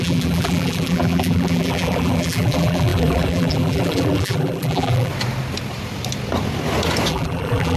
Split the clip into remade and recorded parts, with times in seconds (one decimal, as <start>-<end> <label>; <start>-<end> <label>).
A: 0.0-5.1 remade; 5.1-7.1 recorded; 7.1-7.8 remade